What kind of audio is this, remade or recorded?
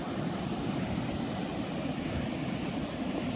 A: recorded